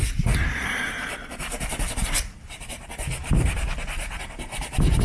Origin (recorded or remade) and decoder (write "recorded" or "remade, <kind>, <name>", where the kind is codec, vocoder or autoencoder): remade, vocoder, BigVGAN v2